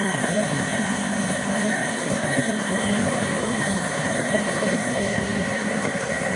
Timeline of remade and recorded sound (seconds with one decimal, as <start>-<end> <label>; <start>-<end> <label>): 0.0-6.4 remade